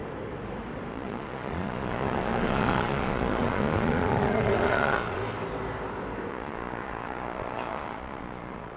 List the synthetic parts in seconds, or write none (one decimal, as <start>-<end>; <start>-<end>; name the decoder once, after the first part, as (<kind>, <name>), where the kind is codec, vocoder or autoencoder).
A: 0.9-5.2 (vocoder, Vocos); 6.3-8.8